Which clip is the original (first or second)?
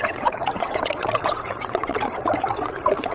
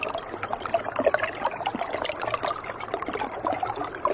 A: second